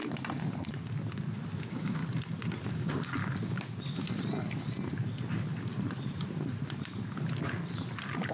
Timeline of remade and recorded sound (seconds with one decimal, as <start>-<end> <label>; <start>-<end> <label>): 0.0-1.6 recorded; 1.6-2.0 remade; 2.0-2.7 recorded; 2.7-3.2 remade; 3.2-8.3 recorded